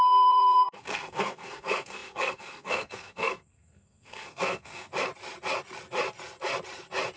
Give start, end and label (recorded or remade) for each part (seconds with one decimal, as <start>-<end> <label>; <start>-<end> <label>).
0.0-4.9 remade; 4.9-7.2 recorded